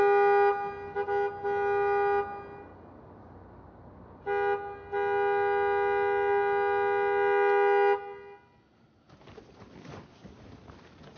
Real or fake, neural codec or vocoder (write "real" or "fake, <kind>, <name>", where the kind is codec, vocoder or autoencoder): real